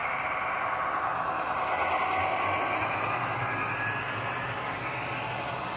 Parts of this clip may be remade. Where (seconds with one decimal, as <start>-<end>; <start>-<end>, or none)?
none